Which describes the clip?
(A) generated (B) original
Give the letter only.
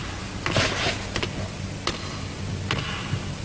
B